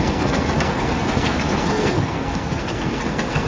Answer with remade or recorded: remade